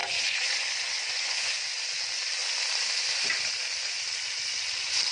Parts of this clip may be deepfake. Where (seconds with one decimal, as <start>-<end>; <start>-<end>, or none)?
0.0-1.6